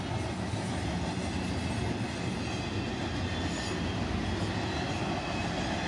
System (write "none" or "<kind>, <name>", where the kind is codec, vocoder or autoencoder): none